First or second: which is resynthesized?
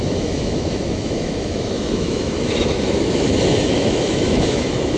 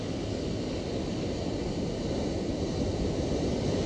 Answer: first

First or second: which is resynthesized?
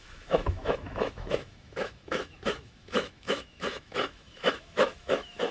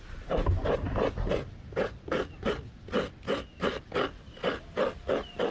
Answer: first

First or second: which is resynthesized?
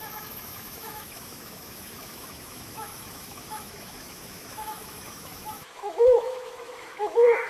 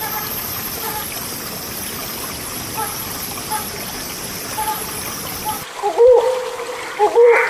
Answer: first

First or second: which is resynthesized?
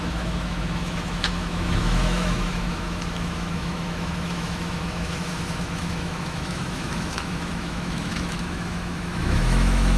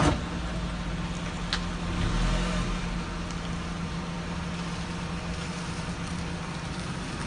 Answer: first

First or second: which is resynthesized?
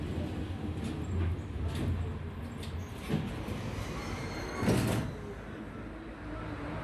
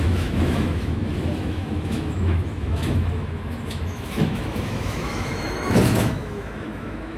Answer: second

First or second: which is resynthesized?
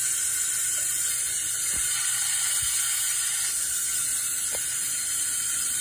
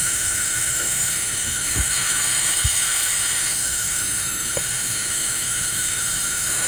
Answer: second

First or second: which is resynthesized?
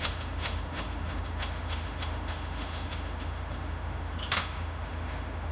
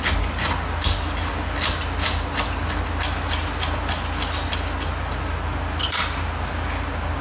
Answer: first